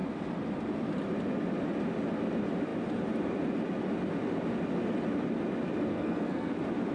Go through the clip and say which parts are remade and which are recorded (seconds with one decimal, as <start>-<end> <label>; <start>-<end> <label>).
0.0-5.9 recorded; 5.9-6.5 remade; 6.5-6.9 recorded